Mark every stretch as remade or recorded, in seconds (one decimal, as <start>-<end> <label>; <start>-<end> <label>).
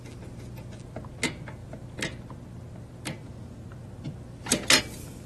0.0-5.3 recorded